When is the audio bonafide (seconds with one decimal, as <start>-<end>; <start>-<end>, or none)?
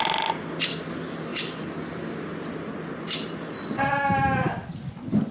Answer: 0.0-5.3